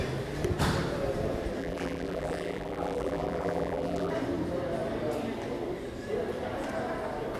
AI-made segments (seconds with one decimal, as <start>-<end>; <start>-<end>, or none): 1.6-4.1